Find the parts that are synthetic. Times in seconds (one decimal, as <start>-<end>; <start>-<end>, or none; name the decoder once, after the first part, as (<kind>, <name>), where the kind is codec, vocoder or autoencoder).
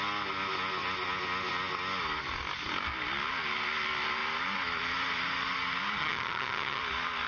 6.0-6.8 (vocoder, HiFi-GAN)